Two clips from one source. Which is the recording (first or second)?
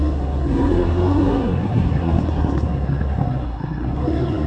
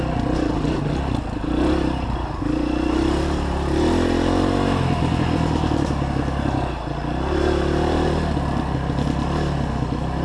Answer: second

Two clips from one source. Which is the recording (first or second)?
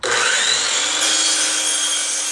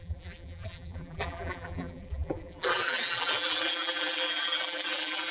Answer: first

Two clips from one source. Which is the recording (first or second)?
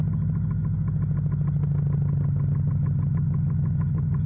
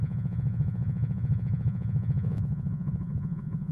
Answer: first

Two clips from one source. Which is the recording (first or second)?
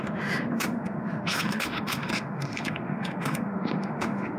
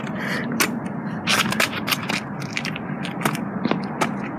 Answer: second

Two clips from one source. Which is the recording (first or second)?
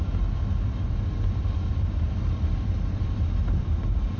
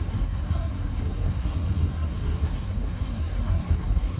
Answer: first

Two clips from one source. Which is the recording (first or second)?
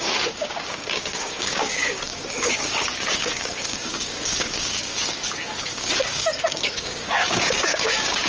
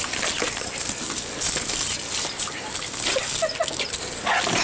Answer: second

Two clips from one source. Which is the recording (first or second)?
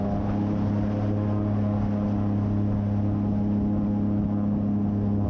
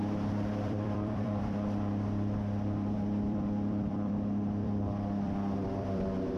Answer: first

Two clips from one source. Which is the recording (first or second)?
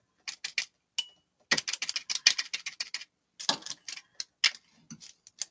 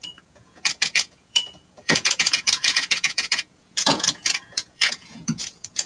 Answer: first